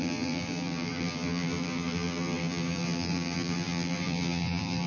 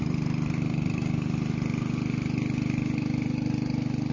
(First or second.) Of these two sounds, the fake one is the first